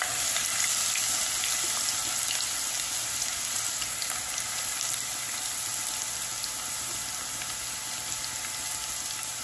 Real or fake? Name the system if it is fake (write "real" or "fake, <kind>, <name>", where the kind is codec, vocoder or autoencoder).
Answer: real